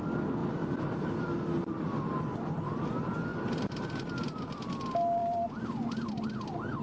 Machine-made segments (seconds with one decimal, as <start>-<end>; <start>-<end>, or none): 0.4-2.9; 3.3-4.8; 5.2-6.1